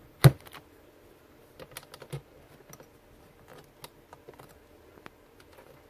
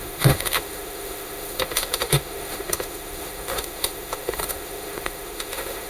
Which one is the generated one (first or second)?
second